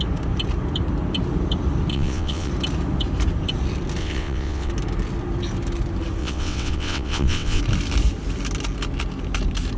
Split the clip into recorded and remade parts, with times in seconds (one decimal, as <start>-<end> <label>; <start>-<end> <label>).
0.0-1.9 recorded; 1.9-2.5 remade; 2.5-4.0 recorded; 4.0-4.7 remade; 4.7-6.2 recorded; 6.2-7.6 remade; 7.6-9.8 recorded